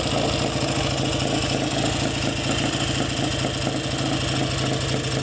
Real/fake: real